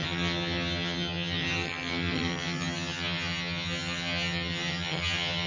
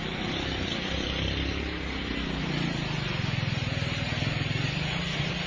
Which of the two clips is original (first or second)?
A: second